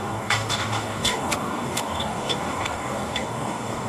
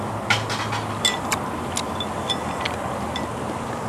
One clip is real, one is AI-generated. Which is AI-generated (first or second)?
first